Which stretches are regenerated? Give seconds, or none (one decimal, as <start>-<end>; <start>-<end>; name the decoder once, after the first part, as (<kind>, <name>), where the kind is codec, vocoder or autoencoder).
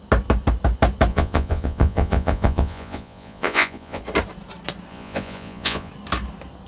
1.1-4.0 (vocoder, Vocos); 4.9-5.9